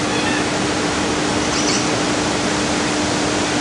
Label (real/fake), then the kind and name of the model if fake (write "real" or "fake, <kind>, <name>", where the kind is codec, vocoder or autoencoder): real